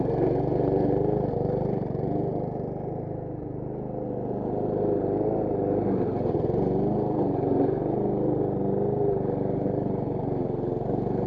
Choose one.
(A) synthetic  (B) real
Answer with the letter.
B